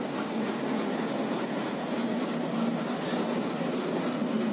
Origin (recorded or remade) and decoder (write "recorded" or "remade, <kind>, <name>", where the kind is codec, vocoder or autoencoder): recorded